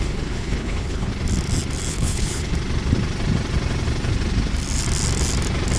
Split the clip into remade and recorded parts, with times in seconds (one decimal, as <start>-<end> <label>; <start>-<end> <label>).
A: 0.0-1.1 remade; 1.1-1.9 recorded; 1.9-2.5 remade; 2.5-5.8 recorded